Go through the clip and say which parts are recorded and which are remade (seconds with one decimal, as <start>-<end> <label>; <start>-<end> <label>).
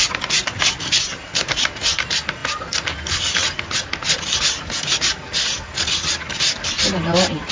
0.0-7.5 recorded